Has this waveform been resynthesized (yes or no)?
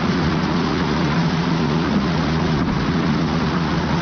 yes